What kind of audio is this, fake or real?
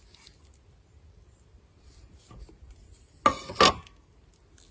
real